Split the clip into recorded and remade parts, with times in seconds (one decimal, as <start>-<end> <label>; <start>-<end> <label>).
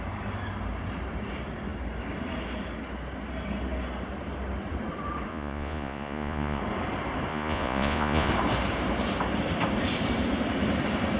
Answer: 0.0-5.3 recorded; 5.3-6.6 remade; 6.6-7.3 recorded; 7.3-8.3 remade; 8.3-11.2 recorded